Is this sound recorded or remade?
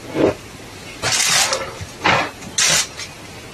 recorded